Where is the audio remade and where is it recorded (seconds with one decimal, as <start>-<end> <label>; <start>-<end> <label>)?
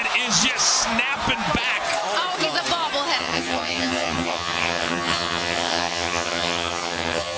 0.0-3.2 recorded; 3.2-7.4 remade